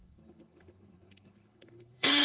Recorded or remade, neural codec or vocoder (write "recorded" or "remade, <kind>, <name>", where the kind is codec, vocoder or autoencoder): remade, codec, HILCodec